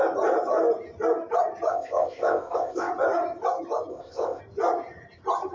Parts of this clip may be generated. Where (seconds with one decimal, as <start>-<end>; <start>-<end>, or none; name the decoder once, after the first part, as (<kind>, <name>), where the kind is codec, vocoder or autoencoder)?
1.7-2.9 (codec, ZipCodec); 3.9-4.4